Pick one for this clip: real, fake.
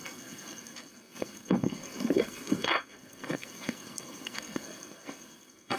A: fake